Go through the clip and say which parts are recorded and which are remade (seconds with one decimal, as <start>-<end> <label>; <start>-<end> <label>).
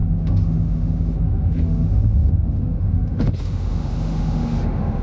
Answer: 0.0-5.0 remade